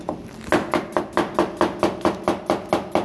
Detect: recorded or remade recorded